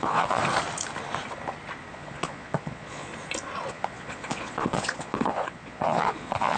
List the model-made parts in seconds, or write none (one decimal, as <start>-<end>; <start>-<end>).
0.0-0.4; 1.9-3.1; 3.7-6.6

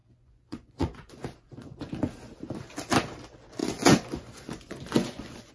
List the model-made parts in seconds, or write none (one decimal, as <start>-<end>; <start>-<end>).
0.0-1.9; 3.6-5.5

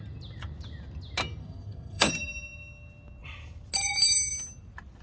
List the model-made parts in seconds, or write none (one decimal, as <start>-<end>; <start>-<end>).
1.4-2.1

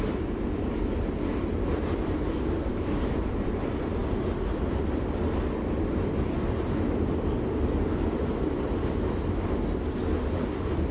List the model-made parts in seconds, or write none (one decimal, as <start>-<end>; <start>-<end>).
none

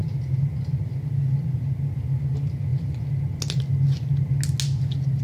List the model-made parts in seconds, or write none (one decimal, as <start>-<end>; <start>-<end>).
none

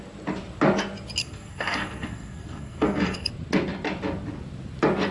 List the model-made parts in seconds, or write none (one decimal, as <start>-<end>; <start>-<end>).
1.2-3.3